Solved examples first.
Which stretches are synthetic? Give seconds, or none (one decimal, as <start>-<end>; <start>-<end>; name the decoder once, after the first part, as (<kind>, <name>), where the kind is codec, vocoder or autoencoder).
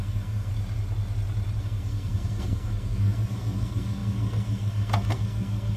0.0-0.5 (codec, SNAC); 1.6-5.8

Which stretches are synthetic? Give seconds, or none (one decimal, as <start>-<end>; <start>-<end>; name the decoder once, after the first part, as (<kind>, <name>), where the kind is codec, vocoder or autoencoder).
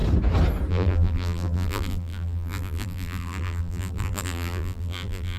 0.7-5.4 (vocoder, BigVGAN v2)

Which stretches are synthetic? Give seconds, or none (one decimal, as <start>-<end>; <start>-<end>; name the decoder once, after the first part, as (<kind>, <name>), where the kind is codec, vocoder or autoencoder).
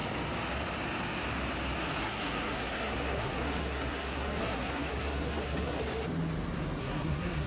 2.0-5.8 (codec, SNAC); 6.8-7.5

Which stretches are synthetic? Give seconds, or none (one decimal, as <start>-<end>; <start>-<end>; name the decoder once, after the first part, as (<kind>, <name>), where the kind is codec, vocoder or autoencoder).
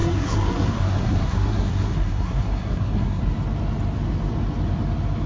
0.0-3.2 (codec, SNAC)